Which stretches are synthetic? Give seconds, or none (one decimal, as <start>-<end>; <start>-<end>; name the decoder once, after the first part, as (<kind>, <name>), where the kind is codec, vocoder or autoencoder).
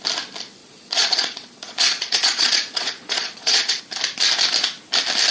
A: 0.6-3.8 (vocoder, Vocos)